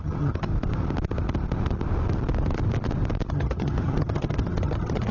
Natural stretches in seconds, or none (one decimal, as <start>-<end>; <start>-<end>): 0.5-3.3